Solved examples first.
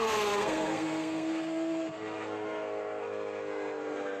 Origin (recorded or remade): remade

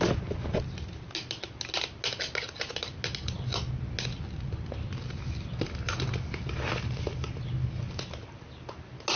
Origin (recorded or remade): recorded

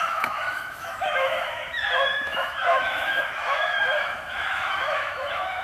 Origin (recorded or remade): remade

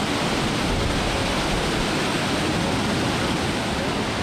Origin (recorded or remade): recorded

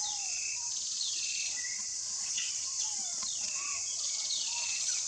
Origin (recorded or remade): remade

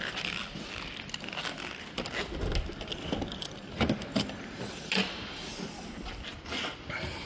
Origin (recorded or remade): recorded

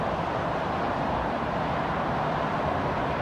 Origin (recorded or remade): recorded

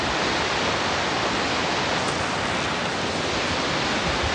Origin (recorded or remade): recorded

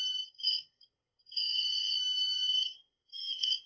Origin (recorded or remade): remade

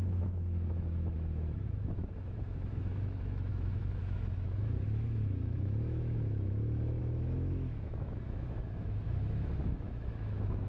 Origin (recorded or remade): remade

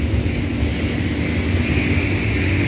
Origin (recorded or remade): recorded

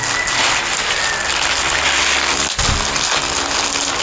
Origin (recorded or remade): recorded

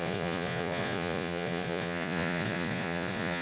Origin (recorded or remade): remade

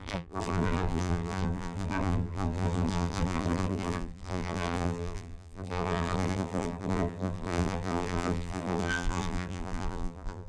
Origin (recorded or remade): remade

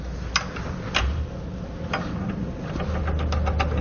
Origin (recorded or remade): recorded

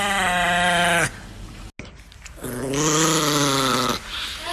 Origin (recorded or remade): recorded